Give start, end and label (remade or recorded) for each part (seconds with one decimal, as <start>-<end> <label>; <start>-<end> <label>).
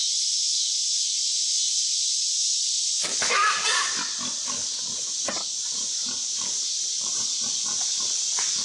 0.0-6.0 recorded; 6.0-7.5 remade; 7.5-8.6 recorded